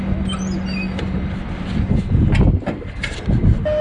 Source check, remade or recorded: recorded